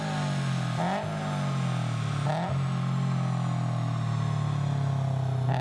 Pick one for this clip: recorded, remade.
recorded